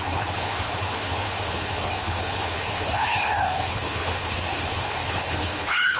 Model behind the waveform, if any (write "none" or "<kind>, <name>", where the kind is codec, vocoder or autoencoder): codec, HILCodec